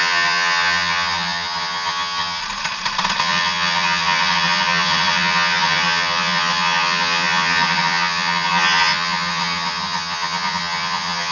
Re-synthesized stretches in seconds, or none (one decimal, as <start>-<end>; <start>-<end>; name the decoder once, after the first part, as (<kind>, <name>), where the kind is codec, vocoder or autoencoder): 0.0-2.4 (vocoder, HiFi-GAN); 3.2-11.3